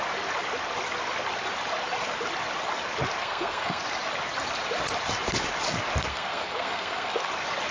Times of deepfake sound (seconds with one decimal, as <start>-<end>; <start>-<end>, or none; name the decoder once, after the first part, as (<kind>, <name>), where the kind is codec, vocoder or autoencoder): 3.2-3.8 (codec, SNAC); 6.1-7.3